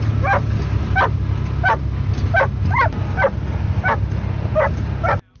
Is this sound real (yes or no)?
yes